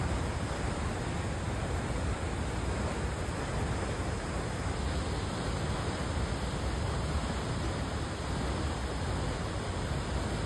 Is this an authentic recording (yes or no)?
yes